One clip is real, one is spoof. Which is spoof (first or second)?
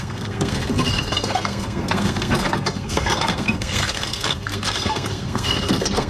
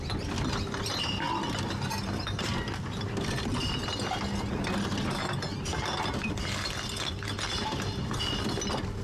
first